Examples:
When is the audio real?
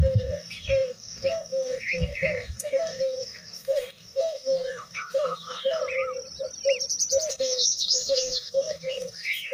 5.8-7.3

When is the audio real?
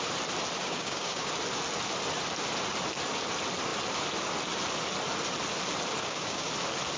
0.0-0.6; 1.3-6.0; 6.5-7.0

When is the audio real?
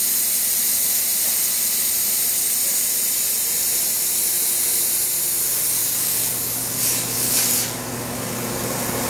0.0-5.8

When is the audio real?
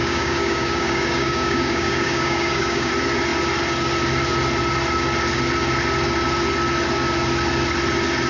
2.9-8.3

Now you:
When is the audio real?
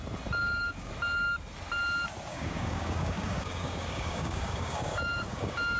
0.0-0.4; 0.9-2.3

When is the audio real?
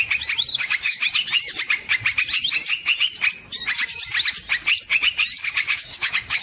0.0-0.5; 1.0-5.4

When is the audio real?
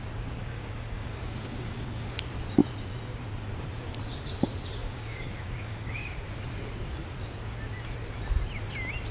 0.0-0.4; 2.2-4.8; 6.3-9.1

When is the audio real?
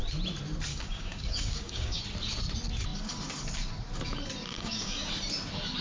0.0-0.7; 2.0-4.5; 5.1-5.8